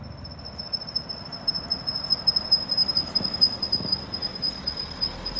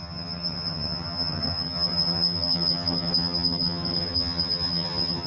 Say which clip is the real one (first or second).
first